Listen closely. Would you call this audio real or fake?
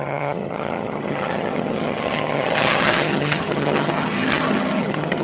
fake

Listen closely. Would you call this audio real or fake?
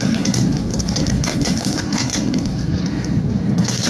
fake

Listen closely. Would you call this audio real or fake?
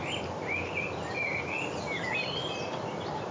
fake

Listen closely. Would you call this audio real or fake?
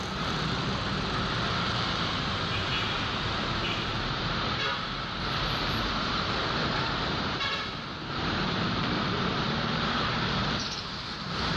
fake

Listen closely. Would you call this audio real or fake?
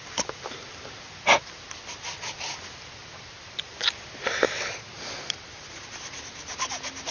real